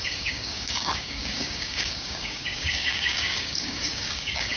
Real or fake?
fake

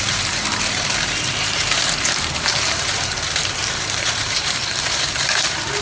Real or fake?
fake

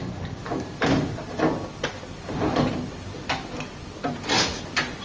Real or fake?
real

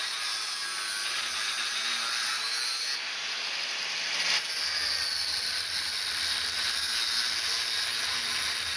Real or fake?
real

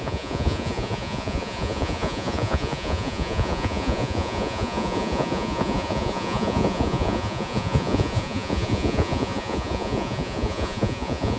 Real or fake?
fake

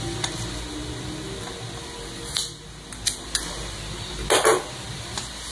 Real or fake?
real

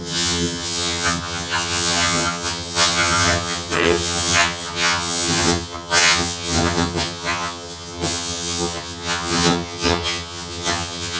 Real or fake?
fake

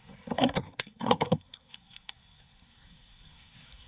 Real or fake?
fake